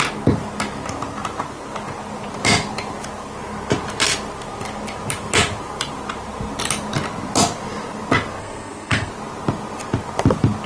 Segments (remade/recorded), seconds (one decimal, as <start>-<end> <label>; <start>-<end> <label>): 0.0-8.4 recorded; 8.4-9.1 remade; 9.1-10.7 recorded

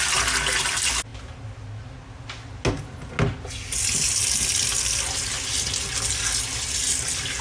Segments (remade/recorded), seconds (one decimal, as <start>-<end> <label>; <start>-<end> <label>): 0.0-7.4 recorded

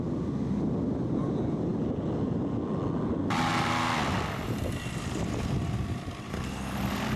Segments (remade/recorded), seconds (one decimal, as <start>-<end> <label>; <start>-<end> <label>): 0.0-7.2 recorded

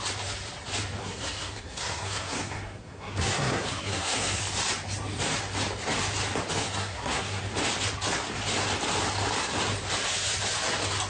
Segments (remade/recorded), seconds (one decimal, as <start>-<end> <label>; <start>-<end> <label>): 0.0-1.0 recorded; 1.0-4.4 remade; 4.4-6.6 recorded; 6.6-7.4 remade; 7.4-11.1 recorded

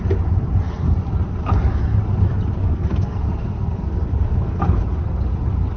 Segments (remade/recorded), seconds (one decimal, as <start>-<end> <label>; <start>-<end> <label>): 0.0-2.6 recorded; 2.6-4.8 remade; 4.8-5.8 recorded

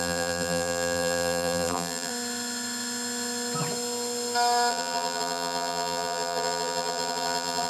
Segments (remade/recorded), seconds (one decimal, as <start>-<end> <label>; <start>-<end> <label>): 0.0-2.1 remade; 2.1-4.7 recorded; 4.7-7.7 remade

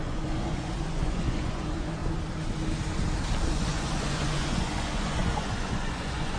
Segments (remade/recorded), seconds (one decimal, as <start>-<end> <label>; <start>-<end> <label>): 0.0-2.0 remade; 2.0-3.5 recorded; 3.5-6.4 remade